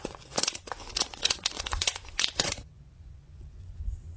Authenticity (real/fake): fake